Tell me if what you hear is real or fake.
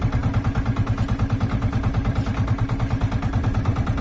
real